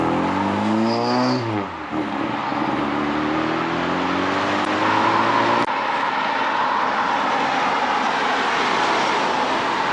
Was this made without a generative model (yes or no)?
yes